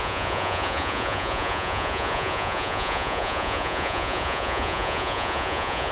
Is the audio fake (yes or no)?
yes